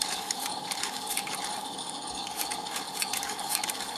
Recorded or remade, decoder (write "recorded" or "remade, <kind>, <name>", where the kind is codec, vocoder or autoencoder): remade, codec, DAC